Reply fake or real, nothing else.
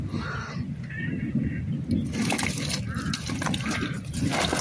real